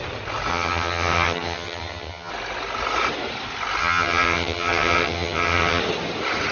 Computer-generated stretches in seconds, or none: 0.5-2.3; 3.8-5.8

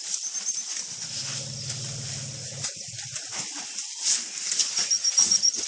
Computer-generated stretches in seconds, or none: 4.6-5.7

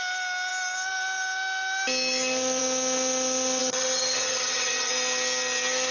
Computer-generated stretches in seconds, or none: 3.6-4.9